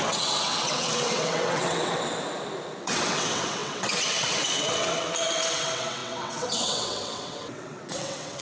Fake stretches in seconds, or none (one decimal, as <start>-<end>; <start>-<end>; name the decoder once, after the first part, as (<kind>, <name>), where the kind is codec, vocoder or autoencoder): 0.0-2.2 (vocoder, WaveNeXt); 2.8-8.4